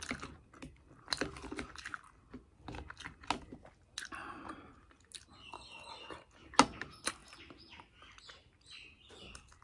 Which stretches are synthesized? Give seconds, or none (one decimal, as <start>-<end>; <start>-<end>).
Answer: none